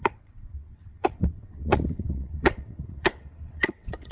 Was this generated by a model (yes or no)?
yes